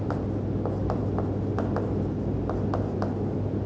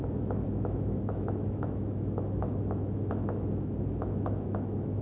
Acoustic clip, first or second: first